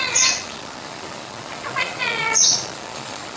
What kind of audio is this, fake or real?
fake